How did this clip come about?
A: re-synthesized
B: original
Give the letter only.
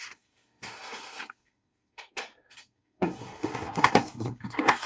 A